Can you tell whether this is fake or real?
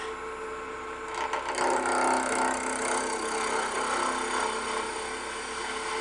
real